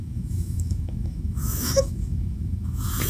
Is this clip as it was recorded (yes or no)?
no